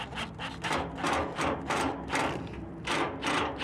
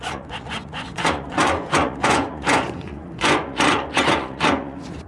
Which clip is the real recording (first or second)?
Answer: first